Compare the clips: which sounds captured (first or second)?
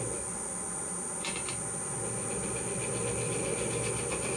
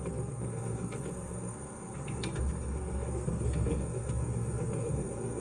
first